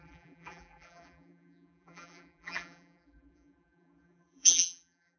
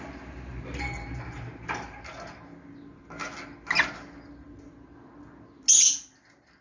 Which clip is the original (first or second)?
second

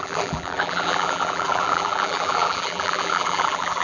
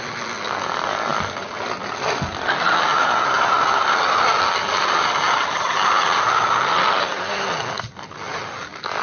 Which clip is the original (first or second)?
second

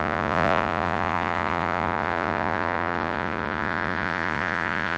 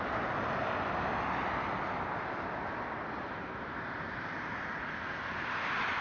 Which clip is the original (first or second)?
second